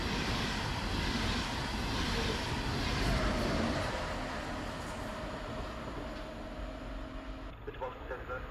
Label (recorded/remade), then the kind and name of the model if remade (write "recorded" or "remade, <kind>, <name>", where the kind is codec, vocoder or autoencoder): recorded